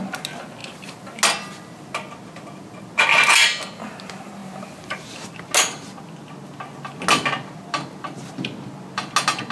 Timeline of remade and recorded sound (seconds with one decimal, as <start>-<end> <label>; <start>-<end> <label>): 0.0-9.5 recorded